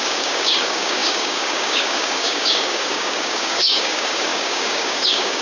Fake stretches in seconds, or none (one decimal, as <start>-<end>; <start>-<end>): 0.0-5.4